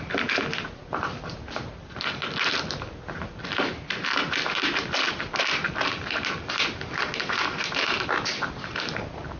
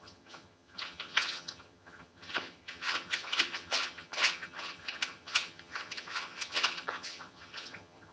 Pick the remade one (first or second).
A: second